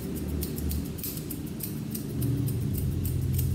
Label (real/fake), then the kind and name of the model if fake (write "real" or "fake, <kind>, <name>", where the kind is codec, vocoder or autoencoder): real